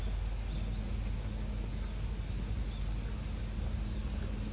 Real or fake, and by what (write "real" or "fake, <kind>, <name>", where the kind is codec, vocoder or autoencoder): real